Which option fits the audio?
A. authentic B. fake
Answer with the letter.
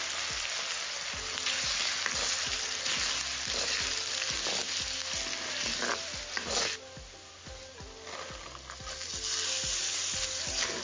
A